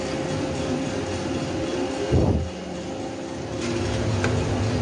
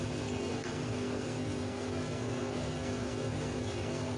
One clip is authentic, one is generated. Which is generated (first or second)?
second